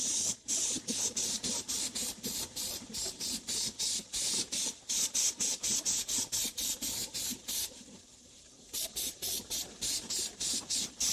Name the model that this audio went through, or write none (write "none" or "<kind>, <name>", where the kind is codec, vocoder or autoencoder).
vocoder, BigVGAN v2